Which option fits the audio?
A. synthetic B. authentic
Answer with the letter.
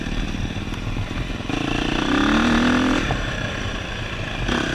B